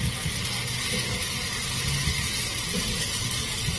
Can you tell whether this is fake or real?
real